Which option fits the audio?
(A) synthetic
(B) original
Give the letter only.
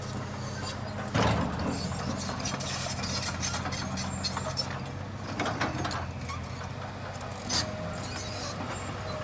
B